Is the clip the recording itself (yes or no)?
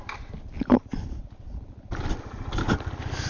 yes